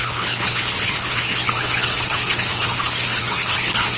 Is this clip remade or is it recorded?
remade